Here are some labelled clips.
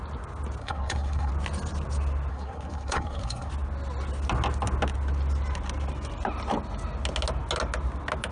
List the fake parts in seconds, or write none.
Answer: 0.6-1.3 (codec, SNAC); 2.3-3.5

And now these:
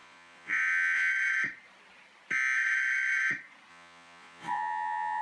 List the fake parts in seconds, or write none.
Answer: 0.0-1.1 (vocoder, Vocos); 3.7-5.2

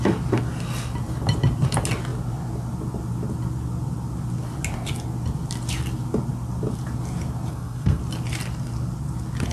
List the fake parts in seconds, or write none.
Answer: 7.5-8.0 (codec, SNAC)

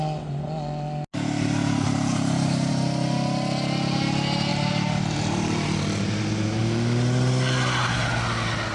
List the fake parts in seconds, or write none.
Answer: 2.1-2.7 (vocoder, BigVGAN v2); 4.5-6.6

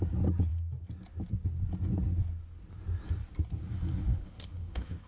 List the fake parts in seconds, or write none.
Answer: 4.1-5.1 (codec, HILCodec)